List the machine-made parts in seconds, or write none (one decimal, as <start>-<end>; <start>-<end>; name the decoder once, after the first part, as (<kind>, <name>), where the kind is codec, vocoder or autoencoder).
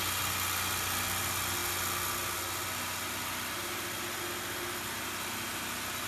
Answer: none